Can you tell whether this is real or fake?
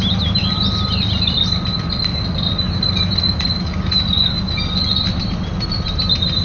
real